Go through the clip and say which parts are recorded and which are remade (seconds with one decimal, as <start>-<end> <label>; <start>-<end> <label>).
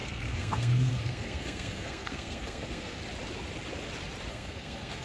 0.0-3.0 remade; 3.0-4.3 recorded; 4.3-5.0 remade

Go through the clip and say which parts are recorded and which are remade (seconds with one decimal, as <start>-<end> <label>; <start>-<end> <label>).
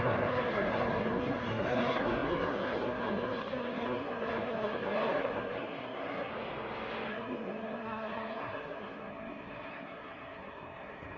0.0-6.3 remade; 6.3-7.1 recorded; 7.1-11.2 remade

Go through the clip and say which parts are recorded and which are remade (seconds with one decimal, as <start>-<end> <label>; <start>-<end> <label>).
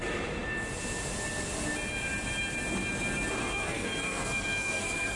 0.0-3.4 recorded; 3.4-5.2 remade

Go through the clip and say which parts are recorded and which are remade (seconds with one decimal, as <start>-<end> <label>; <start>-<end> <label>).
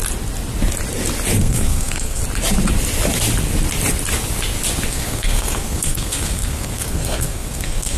0.0-1.4 recorded; 1.4-2.2 remade; 2.2-4.9 recorded; 4.9-8.0 remade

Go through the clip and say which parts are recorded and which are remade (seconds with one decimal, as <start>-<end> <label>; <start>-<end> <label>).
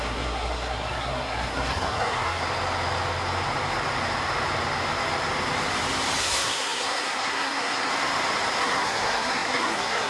0.0-2.4 remade; 2.4-6.2 recorded; 6.2-7.9 remade; 7.9-8.6 recorded; 8.6-10.1 remade